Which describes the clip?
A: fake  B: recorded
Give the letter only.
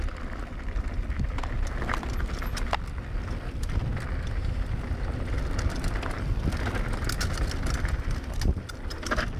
B